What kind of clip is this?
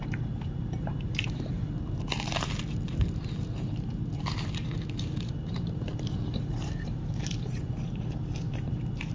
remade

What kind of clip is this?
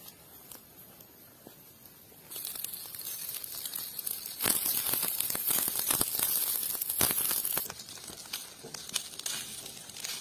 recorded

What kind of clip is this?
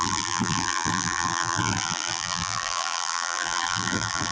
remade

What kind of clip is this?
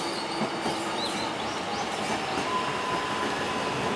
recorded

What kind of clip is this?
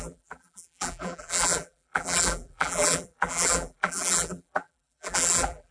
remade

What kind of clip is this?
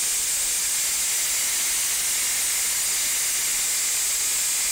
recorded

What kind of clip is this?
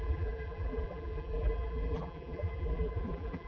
remade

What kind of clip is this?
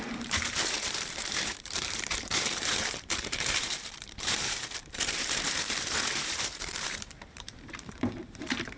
remade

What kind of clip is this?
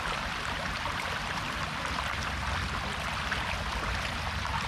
remade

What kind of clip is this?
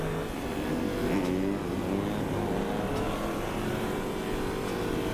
recorded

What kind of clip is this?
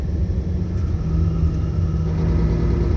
recorded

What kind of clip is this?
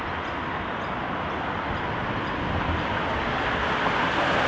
recorded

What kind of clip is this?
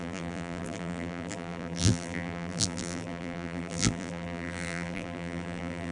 remade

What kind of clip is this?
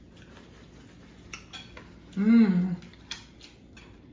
recorded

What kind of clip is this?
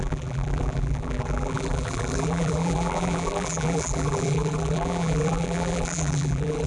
remade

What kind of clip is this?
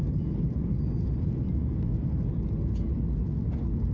recorded